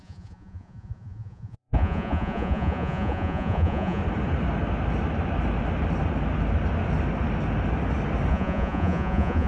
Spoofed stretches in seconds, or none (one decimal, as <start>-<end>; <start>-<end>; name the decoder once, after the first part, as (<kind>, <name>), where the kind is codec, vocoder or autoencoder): 0.0-4.0 (vocoder, Vocos); 8.3-9.5